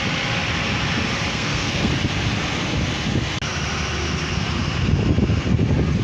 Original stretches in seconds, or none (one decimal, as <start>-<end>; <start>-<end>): 0.0-1.3; 1.9-6.0